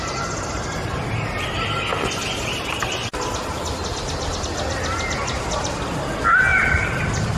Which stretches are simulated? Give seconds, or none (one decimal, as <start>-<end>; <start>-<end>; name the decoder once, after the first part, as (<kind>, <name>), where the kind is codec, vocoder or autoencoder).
6.5-7.4 (vocoder, BigVGAN v2)